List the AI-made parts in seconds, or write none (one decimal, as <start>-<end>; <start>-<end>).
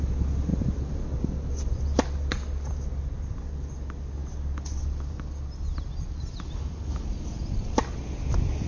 none